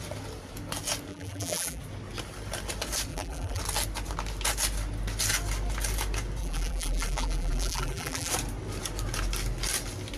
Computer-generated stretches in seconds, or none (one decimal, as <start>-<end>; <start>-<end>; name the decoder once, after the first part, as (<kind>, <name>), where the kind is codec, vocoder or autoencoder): 1.1-1.8 (vocoder, BigVGAN v2); 3.1-3.6; 6.4-8.3